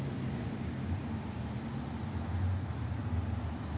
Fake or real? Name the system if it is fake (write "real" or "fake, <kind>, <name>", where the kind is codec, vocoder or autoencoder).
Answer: real